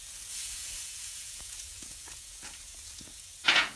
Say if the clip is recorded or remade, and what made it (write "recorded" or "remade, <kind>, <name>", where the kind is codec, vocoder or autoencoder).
remade, vocoder, Vocos